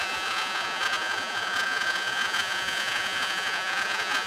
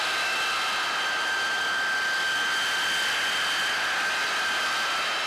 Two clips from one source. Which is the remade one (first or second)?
first